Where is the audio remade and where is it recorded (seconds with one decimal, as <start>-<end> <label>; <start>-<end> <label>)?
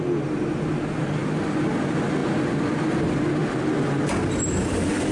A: 0.0-5.1 recorded